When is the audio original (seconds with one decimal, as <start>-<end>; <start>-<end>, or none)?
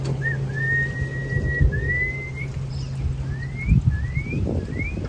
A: 0.0-5.1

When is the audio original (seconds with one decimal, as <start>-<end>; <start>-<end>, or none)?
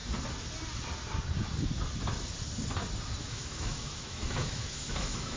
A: 0.0-3.2